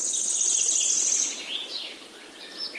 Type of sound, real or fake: real